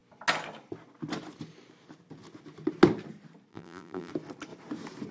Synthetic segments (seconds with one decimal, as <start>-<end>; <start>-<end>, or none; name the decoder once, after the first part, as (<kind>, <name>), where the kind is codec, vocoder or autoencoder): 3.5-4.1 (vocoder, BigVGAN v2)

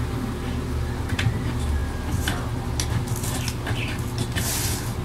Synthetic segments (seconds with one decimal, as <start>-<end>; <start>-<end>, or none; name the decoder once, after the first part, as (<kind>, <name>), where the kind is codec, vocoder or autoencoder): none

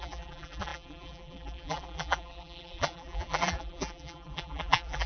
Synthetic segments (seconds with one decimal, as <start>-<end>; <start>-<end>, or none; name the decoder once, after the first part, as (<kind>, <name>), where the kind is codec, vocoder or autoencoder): 0.0-5.1 (vocoder, BigVGAN v2)

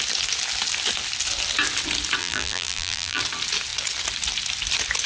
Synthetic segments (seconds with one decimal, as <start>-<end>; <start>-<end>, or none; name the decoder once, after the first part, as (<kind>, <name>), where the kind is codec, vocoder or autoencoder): 2.2-3.2 (vocoder, BigVGAN v2)

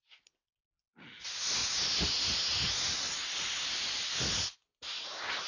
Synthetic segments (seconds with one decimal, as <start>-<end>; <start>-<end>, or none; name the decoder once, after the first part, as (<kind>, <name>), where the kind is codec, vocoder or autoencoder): none

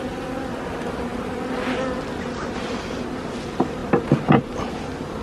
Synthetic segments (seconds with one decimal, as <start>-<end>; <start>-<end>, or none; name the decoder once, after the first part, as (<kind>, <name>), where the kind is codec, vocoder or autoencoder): none